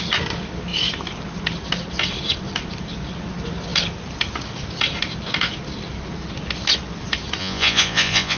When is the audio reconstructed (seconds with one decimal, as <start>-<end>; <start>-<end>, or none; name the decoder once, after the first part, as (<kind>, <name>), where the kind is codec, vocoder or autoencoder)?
7.4-8.4 (vocoder, Vocos)